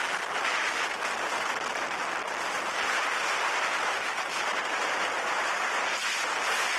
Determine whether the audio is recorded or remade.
recorded